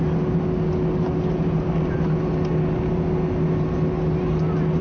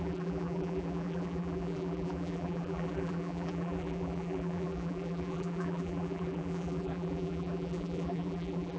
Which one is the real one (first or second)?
first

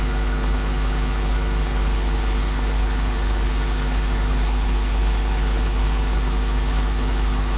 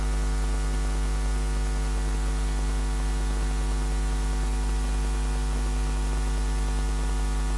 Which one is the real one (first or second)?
second